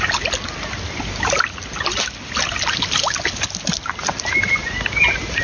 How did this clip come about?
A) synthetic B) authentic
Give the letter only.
B